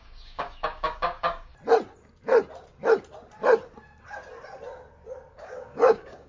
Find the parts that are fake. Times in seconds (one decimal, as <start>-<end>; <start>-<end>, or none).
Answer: 0.0-1.5; 5.3-6.3